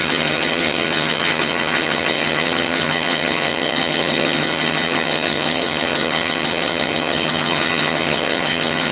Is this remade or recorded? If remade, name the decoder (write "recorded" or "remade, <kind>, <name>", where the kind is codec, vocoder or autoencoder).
remade, vocoder, HiFi-GAN